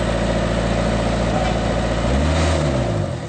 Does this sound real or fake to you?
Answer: real